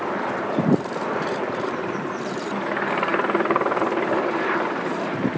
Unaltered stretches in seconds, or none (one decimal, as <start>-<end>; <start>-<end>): none